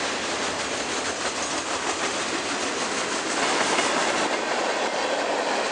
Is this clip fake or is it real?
real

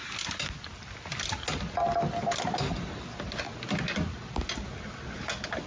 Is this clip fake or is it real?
real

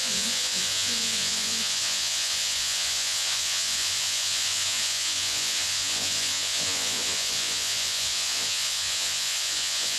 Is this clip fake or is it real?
fake